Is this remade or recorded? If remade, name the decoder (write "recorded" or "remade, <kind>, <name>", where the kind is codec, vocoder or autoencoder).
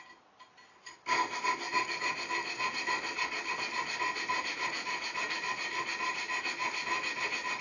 recorded